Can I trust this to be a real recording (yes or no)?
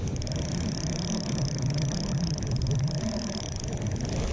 yes